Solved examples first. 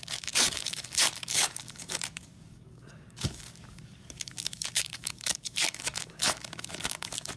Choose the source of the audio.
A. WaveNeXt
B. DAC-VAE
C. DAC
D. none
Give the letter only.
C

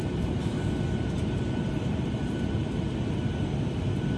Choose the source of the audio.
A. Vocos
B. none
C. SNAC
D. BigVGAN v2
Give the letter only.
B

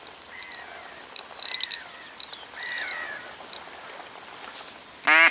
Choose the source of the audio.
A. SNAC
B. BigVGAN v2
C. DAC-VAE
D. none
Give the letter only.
D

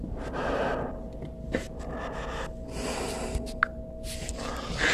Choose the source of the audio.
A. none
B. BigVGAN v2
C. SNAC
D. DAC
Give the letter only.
A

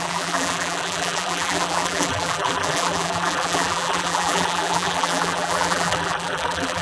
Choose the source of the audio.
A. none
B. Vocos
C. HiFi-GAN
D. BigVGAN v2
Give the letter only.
D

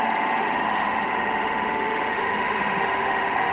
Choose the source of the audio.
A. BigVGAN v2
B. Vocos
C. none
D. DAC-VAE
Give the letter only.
D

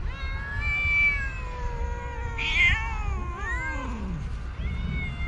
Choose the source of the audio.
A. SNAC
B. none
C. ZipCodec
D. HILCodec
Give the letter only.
B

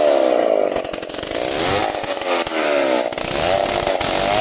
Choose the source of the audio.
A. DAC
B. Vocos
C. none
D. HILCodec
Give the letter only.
C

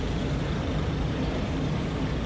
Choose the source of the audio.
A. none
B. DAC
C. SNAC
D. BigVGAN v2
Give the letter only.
D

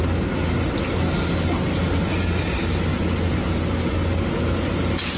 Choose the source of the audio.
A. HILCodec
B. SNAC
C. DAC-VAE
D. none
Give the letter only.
D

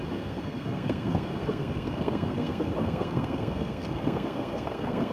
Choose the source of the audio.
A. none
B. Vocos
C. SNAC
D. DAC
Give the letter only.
C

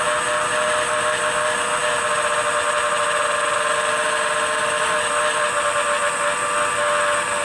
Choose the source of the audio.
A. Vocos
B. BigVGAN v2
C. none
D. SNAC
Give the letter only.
C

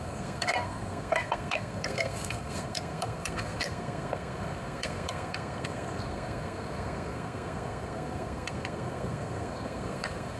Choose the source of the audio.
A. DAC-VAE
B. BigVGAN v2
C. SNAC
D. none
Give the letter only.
C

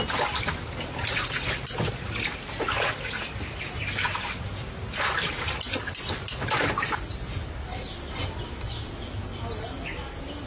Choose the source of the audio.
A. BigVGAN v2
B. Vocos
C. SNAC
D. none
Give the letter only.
D